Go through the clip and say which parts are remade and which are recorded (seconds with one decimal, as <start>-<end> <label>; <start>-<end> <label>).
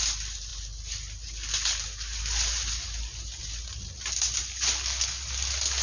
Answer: 0.0-5.8 recorded